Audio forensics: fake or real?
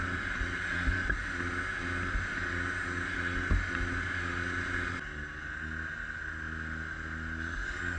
real